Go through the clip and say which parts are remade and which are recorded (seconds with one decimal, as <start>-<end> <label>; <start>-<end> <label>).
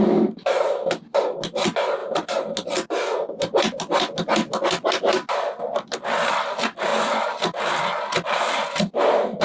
0.0-9.4 recorded